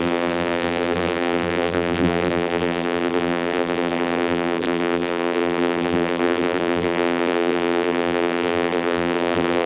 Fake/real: fake